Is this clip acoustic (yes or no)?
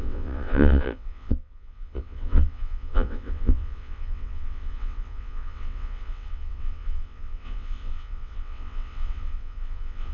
no